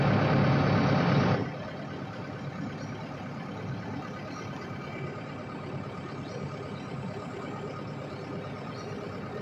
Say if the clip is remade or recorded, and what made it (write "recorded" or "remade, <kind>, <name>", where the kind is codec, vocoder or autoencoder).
recorded